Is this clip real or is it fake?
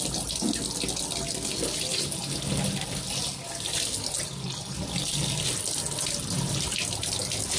real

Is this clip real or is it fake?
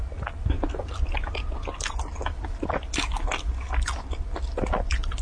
real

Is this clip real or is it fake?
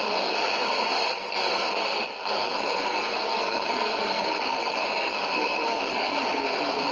fake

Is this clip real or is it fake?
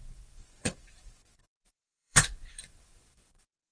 fake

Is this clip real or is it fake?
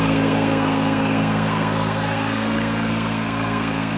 fake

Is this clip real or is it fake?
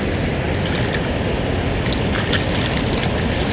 real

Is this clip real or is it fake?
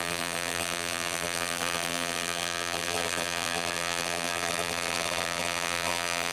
fake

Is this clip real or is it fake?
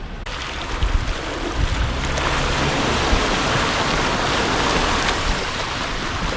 real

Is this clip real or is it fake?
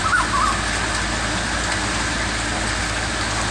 real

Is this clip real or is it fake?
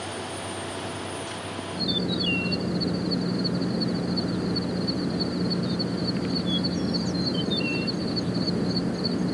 real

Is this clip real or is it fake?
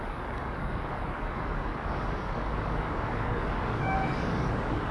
fake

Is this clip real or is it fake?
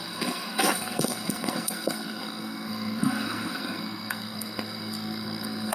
fake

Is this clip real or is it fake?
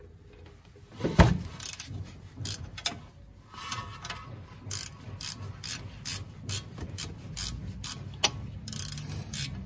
real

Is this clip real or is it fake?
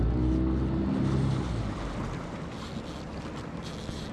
real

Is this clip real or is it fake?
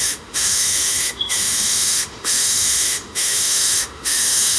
fake